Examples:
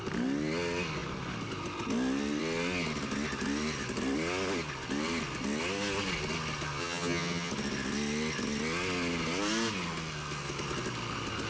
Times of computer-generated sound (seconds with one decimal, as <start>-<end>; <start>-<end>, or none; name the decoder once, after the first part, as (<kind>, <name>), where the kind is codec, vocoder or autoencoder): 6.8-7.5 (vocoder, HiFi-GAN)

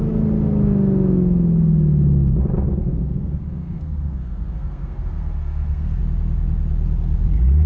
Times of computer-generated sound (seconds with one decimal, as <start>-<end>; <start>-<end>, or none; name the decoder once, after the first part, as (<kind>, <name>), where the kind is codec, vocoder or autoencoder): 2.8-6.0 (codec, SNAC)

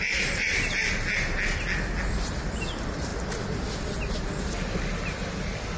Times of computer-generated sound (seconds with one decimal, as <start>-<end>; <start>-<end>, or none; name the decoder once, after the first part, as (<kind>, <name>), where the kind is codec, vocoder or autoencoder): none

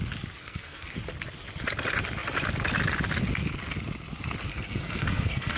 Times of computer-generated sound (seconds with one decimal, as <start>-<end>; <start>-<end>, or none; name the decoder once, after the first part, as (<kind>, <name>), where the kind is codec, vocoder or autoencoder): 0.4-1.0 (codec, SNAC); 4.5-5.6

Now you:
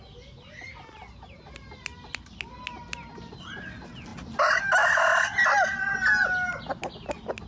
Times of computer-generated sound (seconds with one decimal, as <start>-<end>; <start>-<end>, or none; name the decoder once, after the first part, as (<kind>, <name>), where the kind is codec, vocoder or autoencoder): none

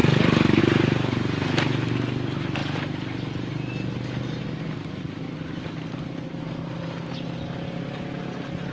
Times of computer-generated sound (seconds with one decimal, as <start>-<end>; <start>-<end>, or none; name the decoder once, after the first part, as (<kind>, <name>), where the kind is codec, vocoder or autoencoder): none